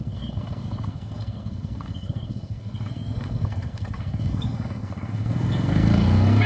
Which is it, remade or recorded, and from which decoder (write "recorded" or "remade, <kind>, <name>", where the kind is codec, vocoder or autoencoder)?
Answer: remade, codec, SNAC